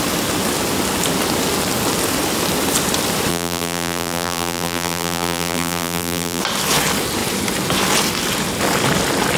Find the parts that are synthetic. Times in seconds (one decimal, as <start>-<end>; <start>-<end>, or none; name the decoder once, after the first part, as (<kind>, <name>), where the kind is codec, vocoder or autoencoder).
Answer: 3.3-6.4 (vocoder, BigVGAN v2)